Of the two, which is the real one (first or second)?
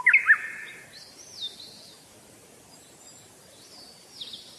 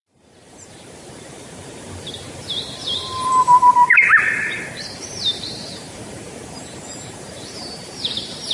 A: first